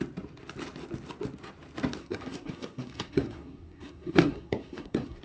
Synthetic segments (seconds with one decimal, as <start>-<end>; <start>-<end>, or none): 2.0-5.2